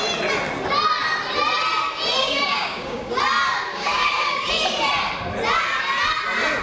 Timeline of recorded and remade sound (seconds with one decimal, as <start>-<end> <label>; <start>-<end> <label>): 0.0-2.2 recorded; 2.2-3.1 remade; 3.1-3.7 recorded; 3.7-4.5 remade; 4.5-6.6 recorded